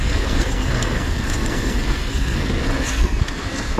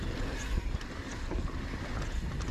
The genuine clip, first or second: second